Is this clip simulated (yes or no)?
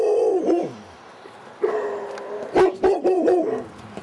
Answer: no